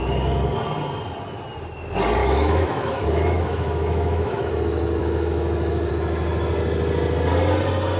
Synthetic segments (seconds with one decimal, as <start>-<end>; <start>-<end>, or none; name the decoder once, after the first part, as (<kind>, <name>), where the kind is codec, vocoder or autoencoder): 2.2-4.5 (autoencoder, DAC-VAE); 5.0-5.9